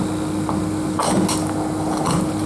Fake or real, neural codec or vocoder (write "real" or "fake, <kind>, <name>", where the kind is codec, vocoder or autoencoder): real